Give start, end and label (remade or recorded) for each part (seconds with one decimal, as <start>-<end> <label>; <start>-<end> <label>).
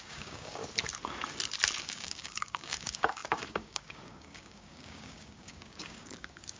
0.0-0.6 remade; 0.6-1.8 recorded; 1.8-6.6 remade